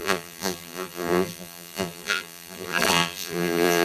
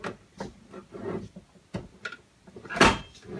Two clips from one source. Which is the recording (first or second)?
second